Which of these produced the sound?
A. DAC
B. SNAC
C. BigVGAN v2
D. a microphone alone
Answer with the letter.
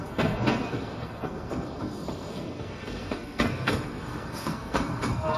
B